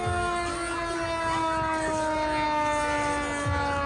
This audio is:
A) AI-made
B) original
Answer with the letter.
B